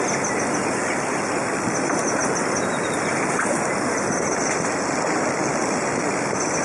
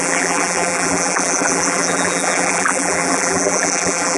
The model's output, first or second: second